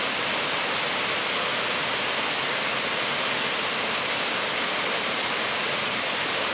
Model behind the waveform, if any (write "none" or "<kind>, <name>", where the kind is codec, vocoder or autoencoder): none